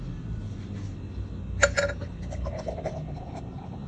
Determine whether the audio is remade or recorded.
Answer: recorded